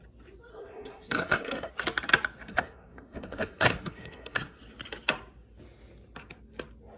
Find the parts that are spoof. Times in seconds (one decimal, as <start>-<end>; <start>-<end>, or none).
0.5-1.7; 2.5-4.6